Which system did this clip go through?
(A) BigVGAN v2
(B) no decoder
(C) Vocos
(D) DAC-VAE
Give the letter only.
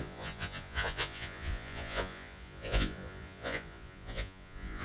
C